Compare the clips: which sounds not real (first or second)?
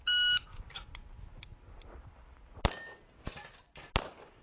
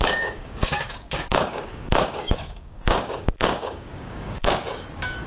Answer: second